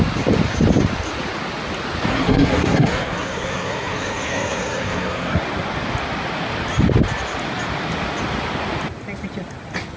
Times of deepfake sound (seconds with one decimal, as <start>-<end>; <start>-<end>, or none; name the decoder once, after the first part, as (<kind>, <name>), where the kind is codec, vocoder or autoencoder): 2.1-5.4 (codec, SNAC)